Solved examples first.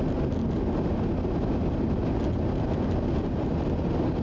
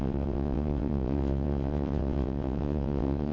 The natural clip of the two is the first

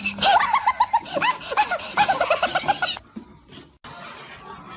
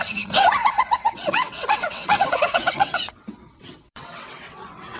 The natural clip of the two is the first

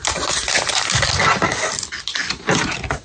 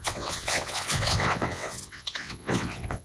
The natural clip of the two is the first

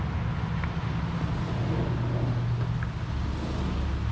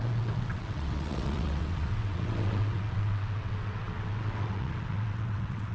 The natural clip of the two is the first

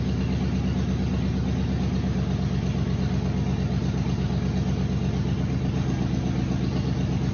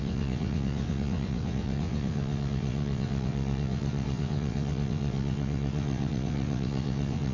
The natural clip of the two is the first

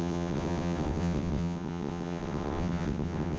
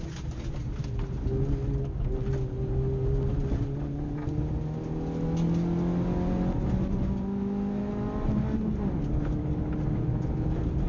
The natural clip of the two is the second